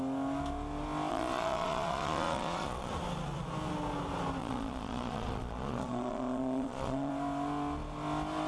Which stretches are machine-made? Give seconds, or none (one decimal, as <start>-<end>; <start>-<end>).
1.1-2.9; 4.4-7.1